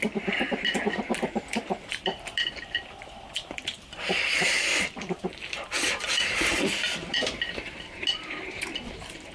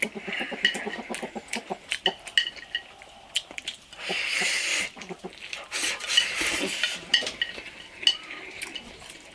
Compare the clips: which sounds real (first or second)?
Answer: second